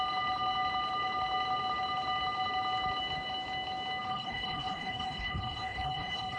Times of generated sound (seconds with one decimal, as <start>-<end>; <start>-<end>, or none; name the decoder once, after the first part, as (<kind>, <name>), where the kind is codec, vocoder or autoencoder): 4.1-6.4 (codec, HILCodec)